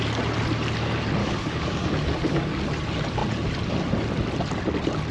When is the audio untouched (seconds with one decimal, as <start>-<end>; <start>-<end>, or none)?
0.0-1.2; 2.6-5.1